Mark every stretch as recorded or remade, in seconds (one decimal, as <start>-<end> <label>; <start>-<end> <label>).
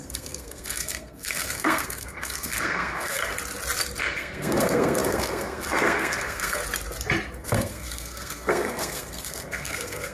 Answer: 0.0-3.3 remade; 3.3-4.0 recorded; 4.0-6.6 remade; 6.6-7.4 recorded; 7.4-10.1 remade